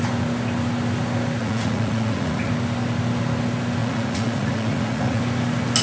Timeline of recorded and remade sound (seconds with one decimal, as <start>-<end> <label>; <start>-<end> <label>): 0.0-1.4 recorded; 1.4-2.5 remade; 2.5-3.8 recorded; 3.8-5.2 remade; 5.2-5.8 recorded